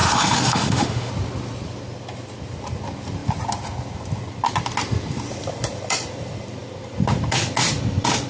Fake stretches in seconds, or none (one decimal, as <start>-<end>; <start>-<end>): 0.0-1.1